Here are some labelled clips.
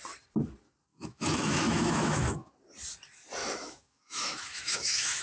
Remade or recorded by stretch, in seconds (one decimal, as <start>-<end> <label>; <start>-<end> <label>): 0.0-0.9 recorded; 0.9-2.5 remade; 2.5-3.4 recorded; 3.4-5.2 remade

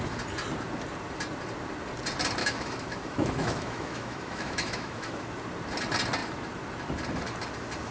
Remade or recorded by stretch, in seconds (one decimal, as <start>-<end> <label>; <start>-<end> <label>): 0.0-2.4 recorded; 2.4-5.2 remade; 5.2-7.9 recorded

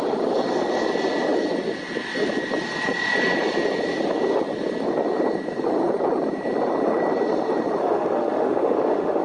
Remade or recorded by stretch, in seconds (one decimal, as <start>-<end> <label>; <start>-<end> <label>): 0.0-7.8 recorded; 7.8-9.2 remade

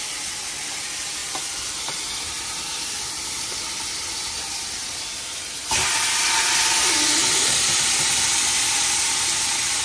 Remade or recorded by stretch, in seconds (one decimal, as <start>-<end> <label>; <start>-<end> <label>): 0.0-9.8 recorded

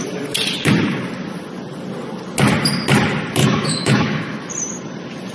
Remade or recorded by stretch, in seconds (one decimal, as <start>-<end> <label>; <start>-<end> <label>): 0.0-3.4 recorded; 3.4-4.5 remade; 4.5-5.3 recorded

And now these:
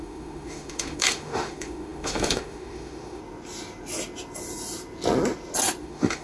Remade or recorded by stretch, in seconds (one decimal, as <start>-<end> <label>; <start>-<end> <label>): 0.0-3.2 remade; 3.2-5.8 recorded; 5.8-6.2 remade

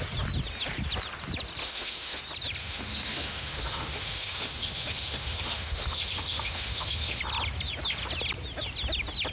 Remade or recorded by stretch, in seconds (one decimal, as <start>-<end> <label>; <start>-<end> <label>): 0.0-1.6 recorded; 1.6-2.2 remade; 2.2-2.6 recorded; 2.6-7.2 remade; 7.2-9.3 recorded